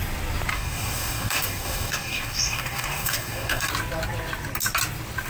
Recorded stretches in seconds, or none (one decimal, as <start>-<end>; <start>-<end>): 0.0-0.5; 3.7-5.3